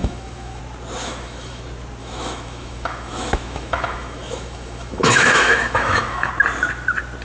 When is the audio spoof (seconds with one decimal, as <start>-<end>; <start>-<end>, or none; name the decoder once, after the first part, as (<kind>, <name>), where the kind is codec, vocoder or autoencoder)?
0.0-0.6 (autoencoder, DAC-VAE); 1.0-1.6; 2.0-6.3